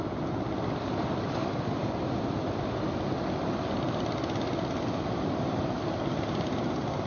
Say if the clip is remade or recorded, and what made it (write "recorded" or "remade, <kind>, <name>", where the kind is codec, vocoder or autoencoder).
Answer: recorded